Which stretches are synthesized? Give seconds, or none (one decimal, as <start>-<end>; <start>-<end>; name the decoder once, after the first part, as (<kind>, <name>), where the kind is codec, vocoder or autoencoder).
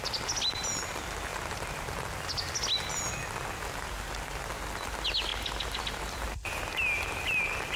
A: none